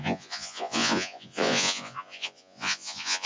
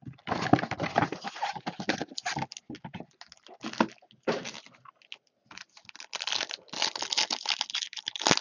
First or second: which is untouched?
second